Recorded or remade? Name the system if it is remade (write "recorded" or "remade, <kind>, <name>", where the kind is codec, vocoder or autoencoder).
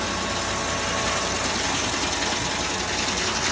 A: recorded